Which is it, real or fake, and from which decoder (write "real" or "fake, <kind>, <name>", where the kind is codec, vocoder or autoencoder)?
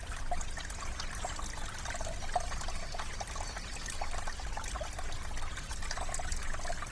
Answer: real